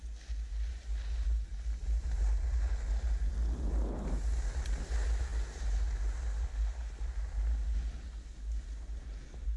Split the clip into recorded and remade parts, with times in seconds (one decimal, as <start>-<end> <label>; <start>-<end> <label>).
0.0-9.6 recorded